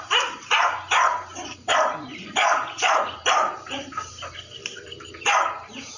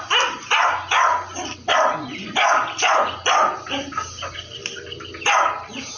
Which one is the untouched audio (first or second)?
second